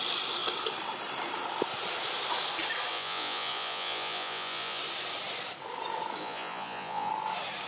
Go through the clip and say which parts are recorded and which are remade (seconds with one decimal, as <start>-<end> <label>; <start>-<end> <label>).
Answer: 0.0-2.9 recorded; 2.9-4.8 remade; 4.8-6.2 recorded; 6.2-7.1 remade; 7.1-7.7 recorded